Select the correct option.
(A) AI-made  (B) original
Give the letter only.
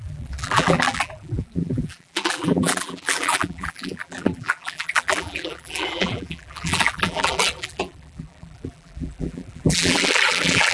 A